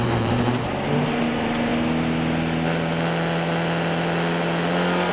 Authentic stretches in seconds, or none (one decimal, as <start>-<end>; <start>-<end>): 1.7-5.1